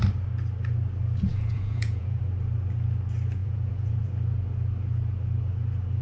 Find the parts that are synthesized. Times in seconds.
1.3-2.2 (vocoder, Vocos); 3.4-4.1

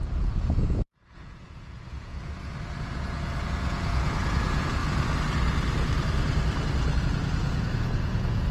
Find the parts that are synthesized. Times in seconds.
0.0-4.8 (vocoder, Vocos); 7.0-8.5

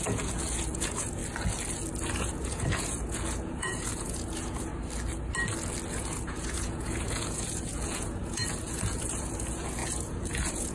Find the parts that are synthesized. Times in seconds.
0.0-1.2 (vocoder, Vocos); 2.1-4.7; 5.9-10.7

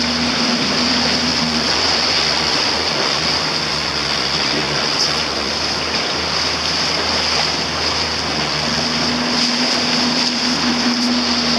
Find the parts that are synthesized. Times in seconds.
1.3-3.3 (vocoder, Vocos); 3.7-5.5; 8.3-8.8

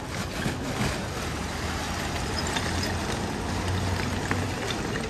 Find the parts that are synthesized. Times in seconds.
none

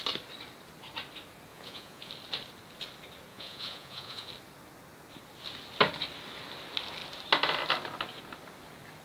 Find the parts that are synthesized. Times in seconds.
1.5-2.1 (vocoder, Vocos); 3.3-4.3

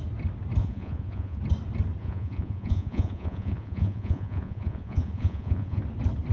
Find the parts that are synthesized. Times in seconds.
0.6-1.4 (vocoder, Vocos); 2.0-5.8